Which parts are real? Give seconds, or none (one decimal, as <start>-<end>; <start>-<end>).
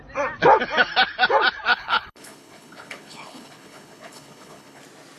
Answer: 0.0-1.7; 4.8-5.2